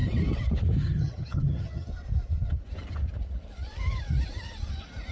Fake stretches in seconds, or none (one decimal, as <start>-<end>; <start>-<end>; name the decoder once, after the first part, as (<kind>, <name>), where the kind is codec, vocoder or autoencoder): 0.8-1.9 (vocoder, HiFi-GAN)